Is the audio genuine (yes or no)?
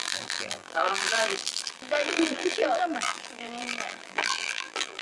no